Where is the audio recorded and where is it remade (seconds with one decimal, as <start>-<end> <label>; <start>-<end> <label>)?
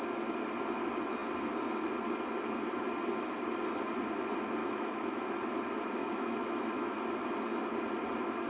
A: 0.0-4.6 recorded; 4.6-5.2 remade; 5.2-6.0 recorded; 6.0-7.0 remade; 7.0-8.5 recorded